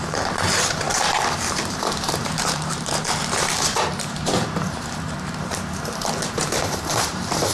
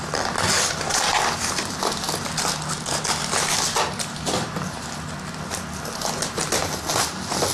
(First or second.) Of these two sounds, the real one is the second